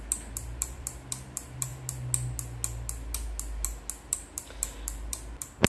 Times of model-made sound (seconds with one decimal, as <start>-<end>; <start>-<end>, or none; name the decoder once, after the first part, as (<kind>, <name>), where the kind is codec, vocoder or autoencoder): 0.0-1.7 (vocoder, BigVGAN v2); 4.1-5.7